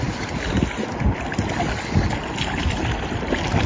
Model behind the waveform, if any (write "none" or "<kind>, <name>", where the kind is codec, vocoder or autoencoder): none